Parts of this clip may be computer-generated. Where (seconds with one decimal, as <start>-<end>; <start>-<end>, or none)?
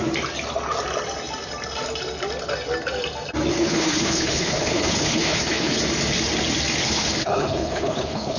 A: 3.6-5.8; 6.8-8.4